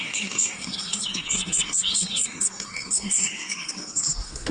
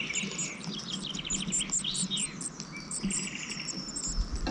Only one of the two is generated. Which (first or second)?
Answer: first